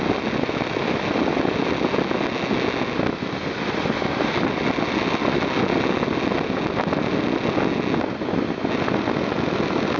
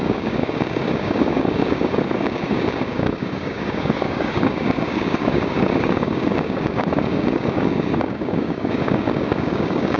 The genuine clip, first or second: first